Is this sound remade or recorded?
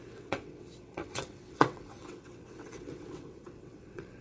remade